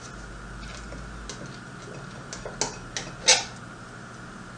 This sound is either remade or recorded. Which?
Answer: recorded